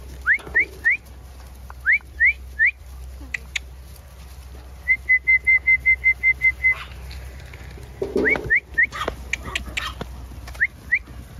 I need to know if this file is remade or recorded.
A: recorded